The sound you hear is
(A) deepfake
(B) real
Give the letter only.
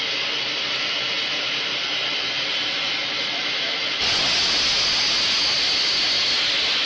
B